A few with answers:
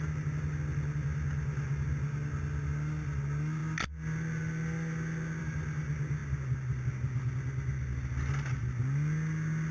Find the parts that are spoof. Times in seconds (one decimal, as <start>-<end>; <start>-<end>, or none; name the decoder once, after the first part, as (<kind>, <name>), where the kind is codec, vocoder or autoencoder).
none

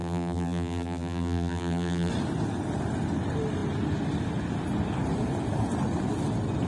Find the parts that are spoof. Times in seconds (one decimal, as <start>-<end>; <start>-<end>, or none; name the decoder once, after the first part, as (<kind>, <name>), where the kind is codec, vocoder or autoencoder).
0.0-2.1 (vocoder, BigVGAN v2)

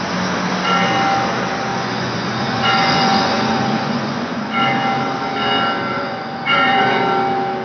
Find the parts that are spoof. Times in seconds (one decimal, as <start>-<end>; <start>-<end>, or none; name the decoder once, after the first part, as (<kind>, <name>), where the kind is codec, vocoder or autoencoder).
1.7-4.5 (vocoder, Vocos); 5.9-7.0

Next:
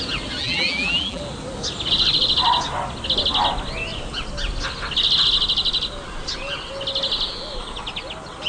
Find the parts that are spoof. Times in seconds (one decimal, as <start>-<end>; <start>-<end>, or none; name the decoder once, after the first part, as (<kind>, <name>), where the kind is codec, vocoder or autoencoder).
0.4-1.2 (vocoder, BigVGAN v2)